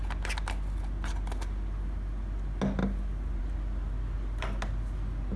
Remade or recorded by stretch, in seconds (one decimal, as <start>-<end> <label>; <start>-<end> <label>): 0.0-5.4 recorded